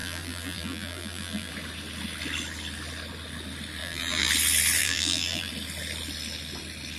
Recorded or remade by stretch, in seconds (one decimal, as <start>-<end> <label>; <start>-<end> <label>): 0.0-1.5 remade; 1.5-3.8 recorded; 3.8-4.3 remade; 4.3-4.8 recorded; 4.8-5.5 remade; 5.5-7.0 recorded